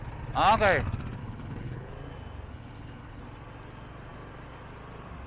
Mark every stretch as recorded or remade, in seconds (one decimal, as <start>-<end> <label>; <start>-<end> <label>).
0.0-1.2 recorded; 1.2-1.9 remade; 1.9-2.5 recorded; 2.5-3.2 remade; 3.2-5.3 recorded